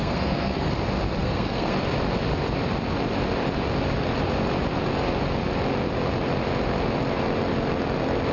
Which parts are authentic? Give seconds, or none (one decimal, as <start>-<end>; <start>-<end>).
0.7-1.2; 1.8-8.3